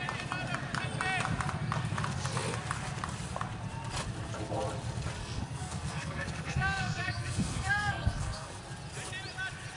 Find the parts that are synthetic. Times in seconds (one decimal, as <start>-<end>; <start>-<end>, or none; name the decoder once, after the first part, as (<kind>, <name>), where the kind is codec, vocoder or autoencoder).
5.2-8.6 (codec, SNAC)